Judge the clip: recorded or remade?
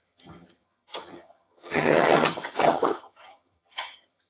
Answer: remade